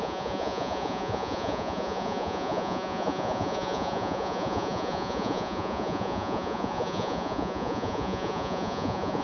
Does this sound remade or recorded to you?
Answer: remade